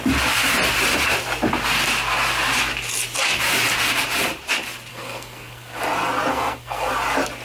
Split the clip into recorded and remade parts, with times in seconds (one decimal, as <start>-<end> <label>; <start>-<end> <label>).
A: 0.0-4.9 recorded; 4.9-5.8 remade; 5.8-6.3 recorded; 6.3-6.9 remade; 6.9-7.4 recorded

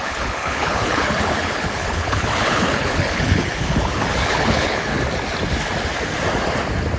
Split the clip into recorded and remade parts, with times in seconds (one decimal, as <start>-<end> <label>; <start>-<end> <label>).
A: 0.0-4.9 remade; 4.9-7.0 recorded